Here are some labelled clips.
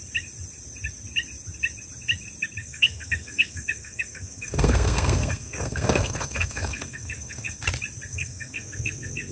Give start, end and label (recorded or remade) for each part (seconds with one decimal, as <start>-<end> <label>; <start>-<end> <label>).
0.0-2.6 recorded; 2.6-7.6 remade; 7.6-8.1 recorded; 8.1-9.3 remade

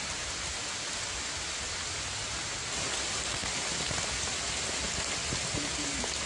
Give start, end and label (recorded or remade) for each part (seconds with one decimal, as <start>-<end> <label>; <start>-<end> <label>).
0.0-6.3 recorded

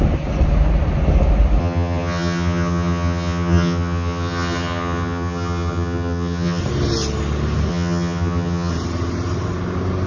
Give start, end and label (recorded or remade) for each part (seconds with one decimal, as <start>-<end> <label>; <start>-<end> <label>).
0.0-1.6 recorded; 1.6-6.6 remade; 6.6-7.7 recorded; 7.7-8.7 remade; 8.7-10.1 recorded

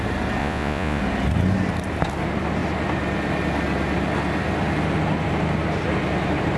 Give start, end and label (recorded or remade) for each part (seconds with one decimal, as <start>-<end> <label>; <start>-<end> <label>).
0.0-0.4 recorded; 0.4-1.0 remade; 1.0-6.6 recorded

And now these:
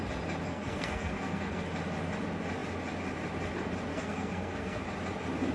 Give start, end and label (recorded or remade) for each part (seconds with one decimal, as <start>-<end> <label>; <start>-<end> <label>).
0.0-0.5 recorded; 0.5-1.6 remade; 1.6-3.9 recorded; 3.9-4.8 remade; 4.8-5.5 recorded

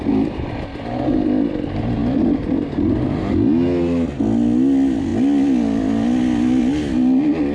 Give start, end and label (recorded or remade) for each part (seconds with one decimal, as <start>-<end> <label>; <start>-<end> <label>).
0.0-7.5 recorded

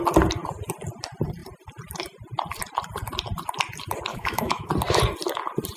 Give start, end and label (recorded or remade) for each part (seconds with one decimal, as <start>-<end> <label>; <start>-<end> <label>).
0.0-4.1 recorded; 4.1-4.7 remade; 4.7-5.8 recorded

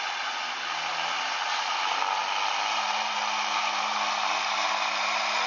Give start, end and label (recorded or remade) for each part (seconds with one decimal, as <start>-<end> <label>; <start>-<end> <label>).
0.0-5.5 recorded